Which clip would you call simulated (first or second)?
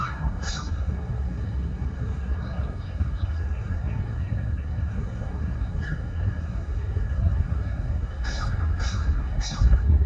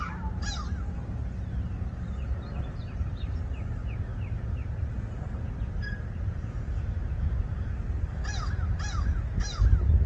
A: first